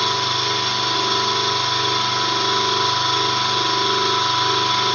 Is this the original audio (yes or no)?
yes